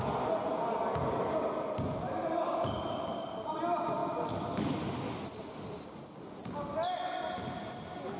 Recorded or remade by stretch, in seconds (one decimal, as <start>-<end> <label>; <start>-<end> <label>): 0.0-8.2 recorded